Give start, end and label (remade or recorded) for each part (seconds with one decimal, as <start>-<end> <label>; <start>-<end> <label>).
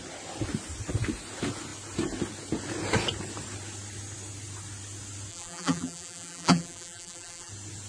0.0-5.3 recorded; 5.3-7.5 remade; 7.5-7.9 recorded